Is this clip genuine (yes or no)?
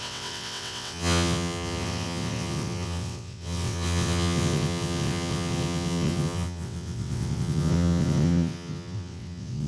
no